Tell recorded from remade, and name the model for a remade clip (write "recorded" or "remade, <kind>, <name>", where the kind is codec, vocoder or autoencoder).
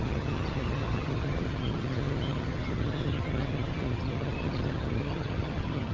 remade, vocoder, HiFi-GAN